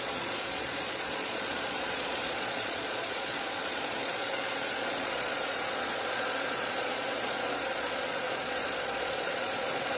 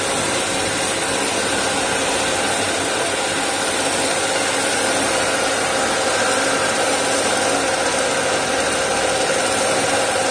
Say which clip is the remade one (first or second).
first